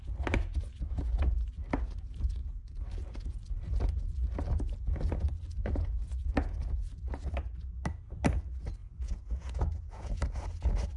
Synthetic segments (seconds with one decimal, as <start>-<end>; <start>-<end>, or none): 8.8-10.2